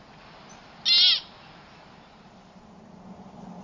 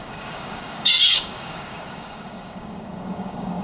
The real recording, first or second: first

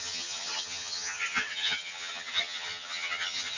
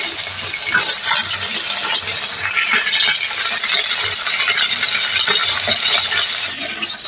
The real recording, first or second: second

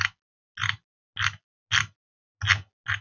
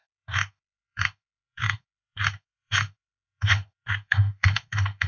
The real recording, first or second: first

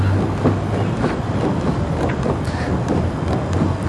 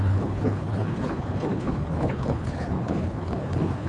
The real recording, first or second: first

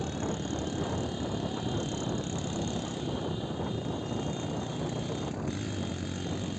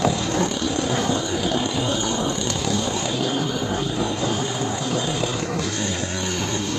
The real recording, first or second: first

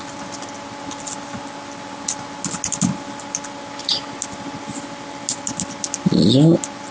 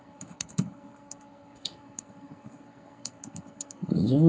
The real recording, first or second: first